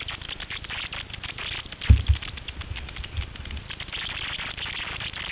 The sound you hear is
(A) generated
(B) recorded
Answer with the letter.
B